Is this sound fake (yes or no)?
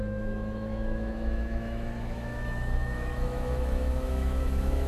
yes